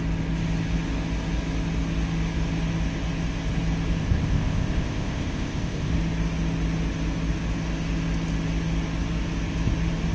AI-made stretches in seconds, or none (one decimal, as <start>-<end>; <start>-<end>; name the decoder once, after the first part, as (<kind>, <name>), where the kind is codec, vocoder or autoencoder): 4.0-5.9 (codec, ZipCodec)